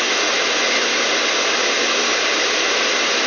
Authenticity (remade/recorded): recorded